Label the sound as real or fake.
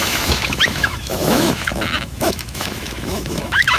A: fake